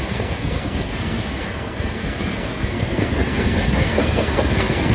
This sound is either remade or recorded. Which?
remade